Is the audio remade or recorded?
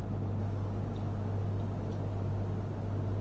recorded